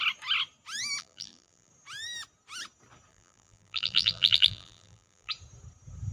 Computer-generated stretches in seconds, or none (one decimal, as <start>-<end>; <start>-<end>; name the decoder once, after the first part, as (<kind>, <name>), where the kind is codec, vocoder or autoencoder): 1.0-1.7 (vocoder, BigVGAN v2); 3.1-5.3